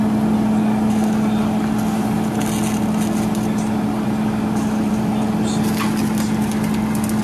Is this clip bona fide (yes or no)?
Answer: yes